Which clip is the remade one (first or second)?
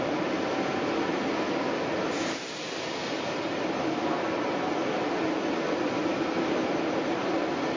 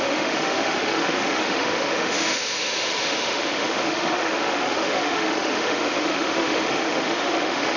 second